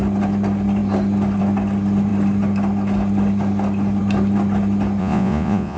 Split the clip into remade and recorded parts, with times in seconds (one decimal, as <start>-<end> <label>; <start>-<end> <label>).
0.0-5.0 recorded; 5.0-5.8 remade